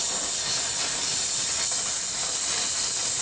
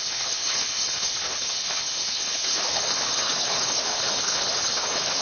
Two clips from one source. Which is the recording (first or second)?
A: first